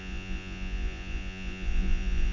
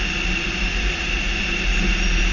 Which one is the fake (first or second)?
first